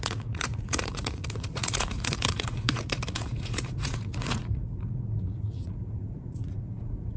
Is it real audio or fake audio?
fake